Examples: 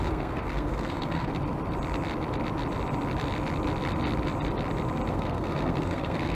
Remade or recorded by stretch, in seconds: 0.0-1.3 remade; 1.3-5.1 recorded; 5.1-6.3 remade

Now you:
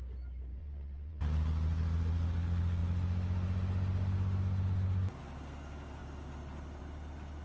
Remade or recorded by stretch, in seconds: 0.0-0.6 recorded; 0.6-1.2 remade; 1.2-7.4 recorded

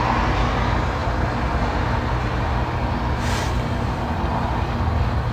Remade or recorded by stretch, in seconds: 0.0-5.3 recorded

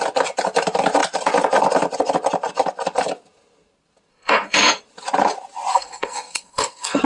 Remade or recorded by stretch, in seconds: 0.0-4.1 recorded; 4.1-4.8 remade; 4.8-5.7 recorded; 5.7-7.0 remade

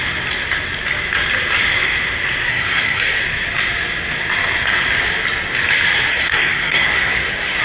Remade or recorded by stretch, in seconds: 0.0-2.5 recorded; 2.5-3.2 remade; 3.2-6.1 recorded; 6.1-7.6 remade

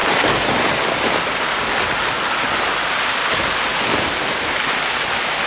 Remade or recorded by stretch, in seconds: 0.0-5.5 recorded